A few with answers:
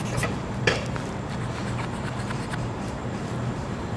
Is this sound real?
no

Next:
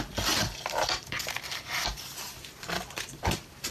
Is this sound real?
no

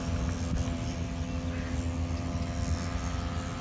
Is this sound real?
yes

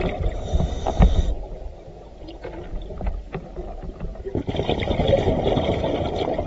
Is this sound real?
yes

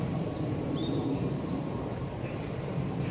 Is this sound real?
no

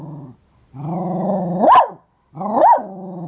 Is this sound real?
yes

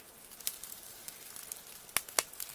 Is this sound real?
yes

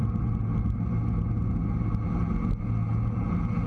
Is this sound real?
yes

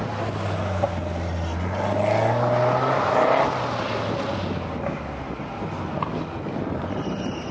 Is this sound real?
yes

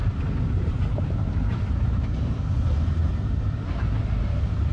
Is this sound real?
no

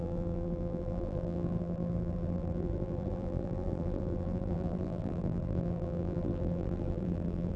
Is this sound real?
no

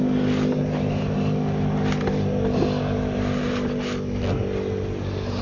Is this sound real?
yes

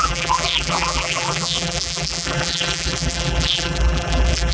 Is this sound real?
no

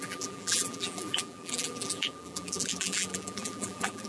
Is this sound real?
no